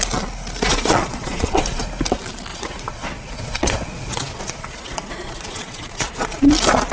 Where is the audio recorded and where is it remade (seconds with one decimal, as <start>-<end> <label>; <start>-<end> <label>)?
0.0-0.7 recorded; 0.7-1.8 remade; 1.8-2.5 recorded; 2.5-6.5 remade; 6.5-6.9 recorded

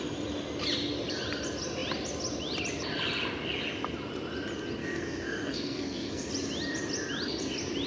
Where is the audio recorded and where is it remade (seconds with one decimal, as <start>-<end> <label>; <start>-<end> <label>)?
0.0-4.8 recorded; 4.8-6.3 remade; 6.3-7.9 recorded

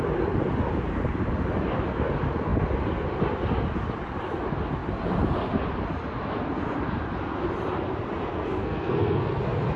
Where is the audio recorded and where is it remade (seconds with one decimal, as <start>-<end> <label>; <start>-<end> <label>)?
0.0-8.3 recorded; 8.3-9.4 remade; 9.4-9.8 recorded

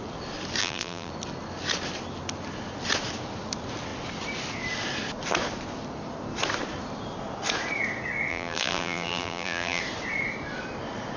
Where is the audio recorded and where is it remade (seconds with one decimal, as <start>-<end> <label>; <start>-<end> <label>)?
0.0-0.6 recorded; 0.6-1.1 remade; 1.1-8.3 recorded; 8.3-9.8 remade; 9.8-11.2 recorded

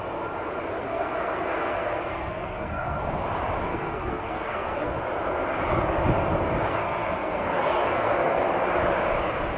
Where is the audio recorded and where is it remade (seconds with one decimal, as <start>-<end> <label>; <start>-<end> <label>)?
0.0-0.8 recorded; 0.8-3.0 remade; 3.0-3.7 recorded; 3.7-4.9 remade; 4.9-6.7 recorded; 6.7-8.4 remade; 8.4-9.6 recorded